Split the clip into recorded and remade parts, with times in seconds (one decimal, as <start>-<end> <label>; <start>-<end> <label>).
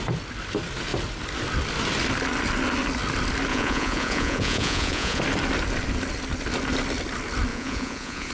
0.0-3.5 recorded; 3.5-5.2 remade; 5.2-7.5 recorded; 7.5-8.3 remade